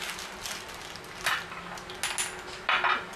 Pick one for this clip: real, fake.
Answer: real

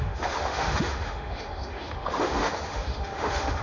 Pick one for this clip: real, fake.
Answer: fake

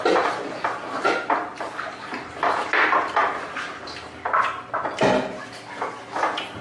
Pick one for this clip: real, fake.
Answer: real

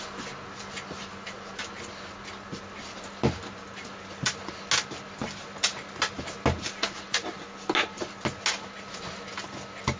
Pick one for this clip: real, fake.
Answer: real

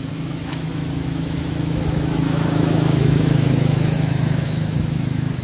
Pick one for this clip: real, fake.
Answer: fake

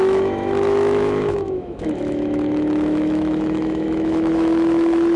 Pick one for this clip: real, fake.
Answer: fake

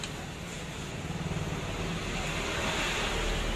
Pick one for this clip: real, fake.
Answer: real